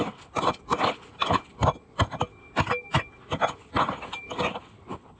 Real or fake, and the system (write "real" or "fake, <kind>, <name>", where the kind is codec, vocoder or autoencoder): real